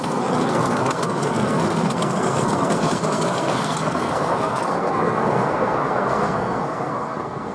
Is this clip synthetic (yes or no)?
yes